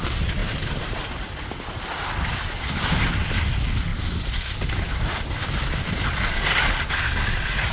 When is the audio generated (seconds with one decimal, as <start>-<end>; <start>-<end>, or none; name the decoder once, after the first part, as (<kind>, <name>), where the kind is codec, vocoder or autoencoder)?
none